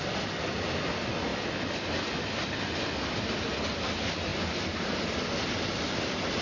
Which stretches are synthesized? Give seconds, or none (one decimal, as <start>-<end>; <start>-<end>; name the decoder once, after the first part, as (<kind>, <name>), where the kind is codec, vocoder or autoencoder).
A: none